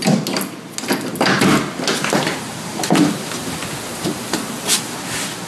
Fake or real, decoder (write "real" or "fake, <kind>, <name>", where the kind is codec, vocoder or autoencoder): real